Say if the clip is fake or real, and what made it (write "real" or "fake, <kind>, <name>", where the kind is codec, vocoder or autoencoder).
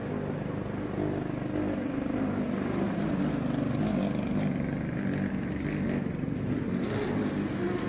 real